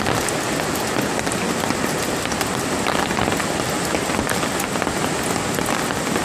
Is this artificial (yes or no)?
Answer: no